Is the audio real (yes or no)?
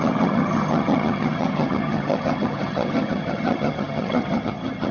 no